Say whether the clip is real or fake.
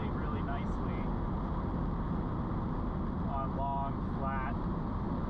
real